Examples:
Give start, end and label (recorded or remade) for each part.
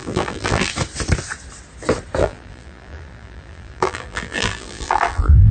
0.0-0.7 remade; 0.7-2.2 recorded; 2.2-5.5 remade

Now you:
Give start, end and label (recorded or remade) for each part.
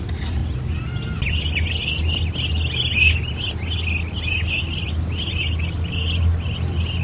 0.0-7.0 recorded